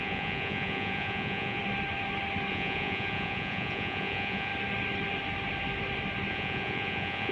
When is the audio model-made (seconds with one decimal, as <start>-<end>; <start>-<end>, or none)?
0.0-1.6; 2.5-4.5; 6.3-7.3